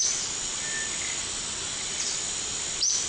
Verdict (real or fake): real